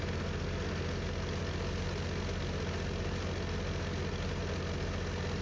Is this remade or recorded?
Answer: recorded